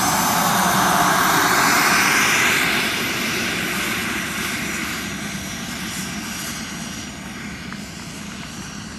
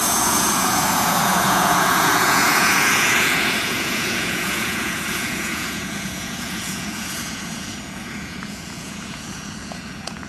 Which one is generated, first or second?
second